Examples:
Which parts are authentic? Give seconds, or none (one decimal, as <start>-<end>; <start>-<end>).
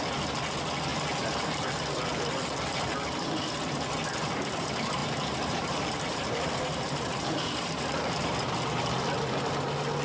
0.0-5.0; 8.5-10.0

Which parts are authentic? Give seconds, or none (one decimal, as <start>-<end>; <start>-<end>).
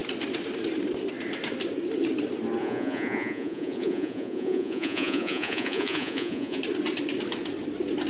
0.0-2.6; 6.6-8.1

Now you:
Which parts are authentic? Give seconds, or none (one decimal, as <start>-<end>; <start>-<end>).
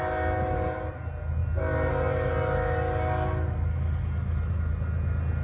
0.0-5.4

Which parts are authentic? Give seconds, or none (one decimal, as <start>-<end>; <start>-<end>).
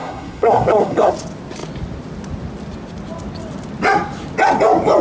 1.1-5.0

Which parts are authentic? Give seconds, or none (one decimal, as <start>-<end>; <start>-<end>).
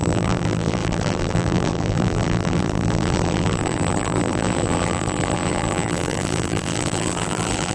none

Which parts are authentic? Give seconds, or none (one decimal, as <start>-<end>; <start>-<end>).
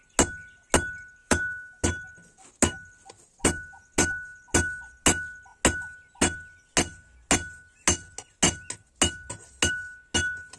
0.0-1.2; 1.8-10.6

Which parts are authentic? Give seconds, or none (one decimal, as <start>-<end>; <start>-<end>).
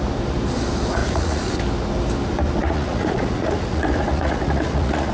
0.0-1.0; 1.6-2.6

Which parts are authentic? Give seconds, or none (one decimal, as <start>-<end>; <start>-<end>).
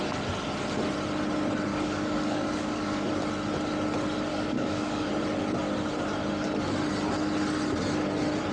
0.0-1.7; 3.1-4.3; 5.1-8.5